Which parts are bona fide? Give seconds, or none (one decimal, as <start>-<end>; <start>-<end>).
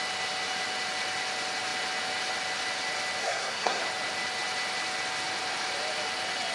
0.0-3.2; 3.8-6.5